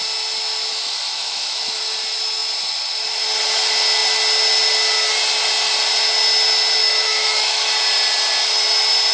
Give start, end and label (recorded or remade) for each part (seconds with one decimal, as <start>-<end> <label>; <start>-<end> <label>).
0.0-0.7 recorded; 0.7-1.8 remade; 1.8-6.8 recorded; 6.8-7.7 remade; 7.7-9.1 recorded